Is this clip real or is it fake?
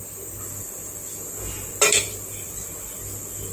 real